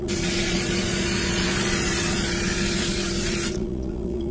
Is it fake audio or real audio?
fake